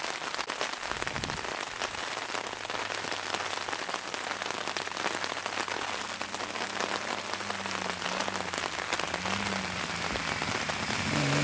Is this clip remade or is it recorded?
recorded